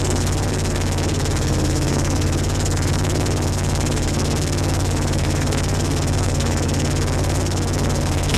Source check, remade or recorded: remade